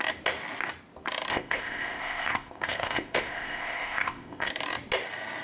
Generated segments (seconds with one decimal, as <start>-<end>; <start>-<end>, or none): 1.3-4.5